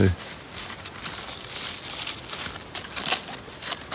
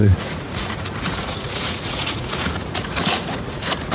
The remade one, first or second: second